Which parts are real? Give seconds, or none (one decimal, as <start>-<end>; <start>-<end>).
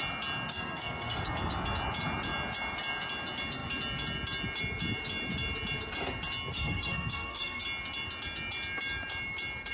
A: 0.0-0.5; 1.2-6.5; 7.6-9.7